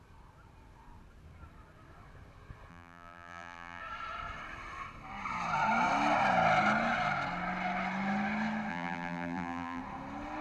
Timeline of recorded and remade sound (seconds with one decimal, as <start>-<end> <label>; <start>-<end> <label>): 0.0-2.7 recorded; 2.7-3.8 remade; 3.8-8.7 recorded; 8.7-9.8 remade; 9.8-10.4 recorded